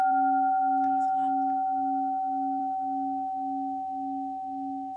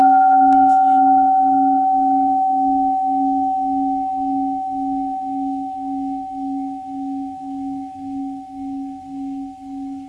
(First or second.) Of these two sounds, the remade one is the second